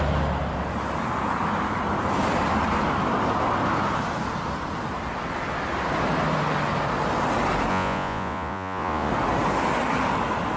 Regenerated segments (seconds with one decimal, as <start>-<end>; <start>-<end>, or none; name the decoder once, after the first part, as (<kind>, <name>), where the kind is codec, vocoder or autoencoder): 7.7-9.1 (vocoder, Vocos)

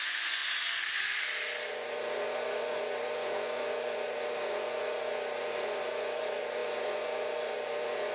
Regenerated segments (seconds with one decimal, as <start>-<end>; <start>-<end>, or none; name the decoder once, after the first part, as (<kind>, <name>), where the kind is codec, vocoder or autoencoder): 0.0-0.4 (vocoder, Vocos); 1.7-8.1